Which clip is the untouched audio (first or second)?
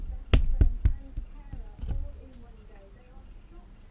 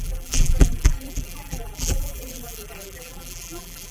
first